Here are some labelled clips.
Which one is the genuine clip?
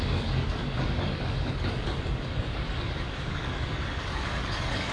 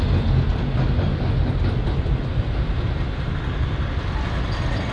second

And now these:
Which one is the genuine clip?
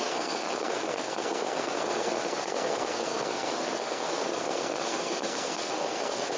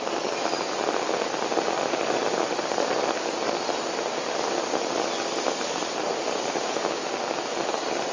second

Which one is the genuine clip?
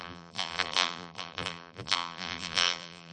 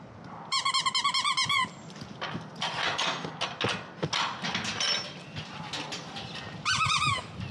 second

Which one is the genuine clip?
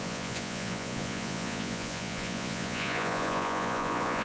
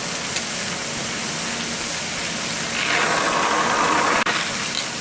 second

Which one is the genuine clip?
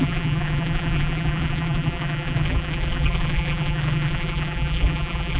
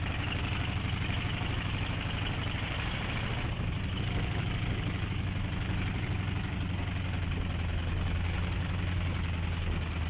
second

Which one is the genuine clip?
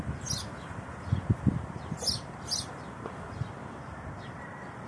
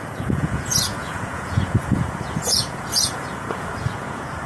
first